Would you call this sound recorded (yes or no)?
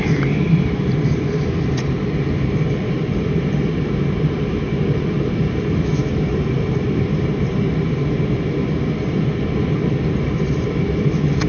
no